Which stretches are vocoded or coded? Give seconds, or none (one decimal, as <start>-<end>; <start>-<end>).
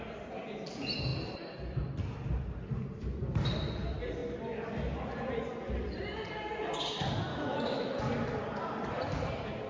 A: 7.3-8.0